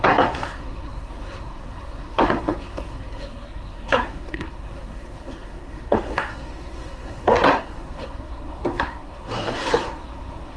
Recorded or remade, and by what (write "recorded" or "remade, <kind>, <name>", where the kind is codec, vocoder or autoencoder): remade, codec, SNAC